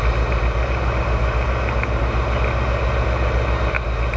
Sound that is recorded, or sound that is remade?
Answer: recorded